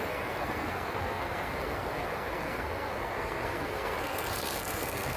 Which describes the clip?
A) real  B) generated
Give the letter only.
B